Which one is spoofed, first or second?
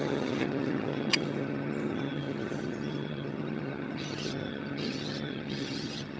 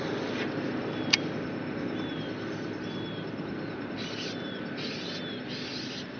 first